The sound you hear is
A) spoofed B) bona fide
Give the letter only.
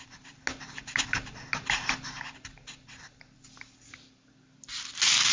B